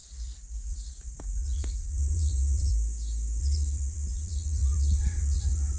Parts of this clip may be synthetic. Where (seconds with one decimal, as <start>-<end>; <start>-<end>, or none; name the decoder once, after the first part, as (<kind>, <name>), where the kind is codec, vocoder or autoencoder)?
0.0-2.7 (vocoder, Vocos); 3.4-5.8